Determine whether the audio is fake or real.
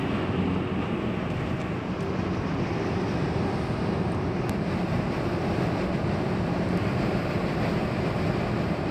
real